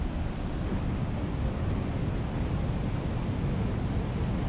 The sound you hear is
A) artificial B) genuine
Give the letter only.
B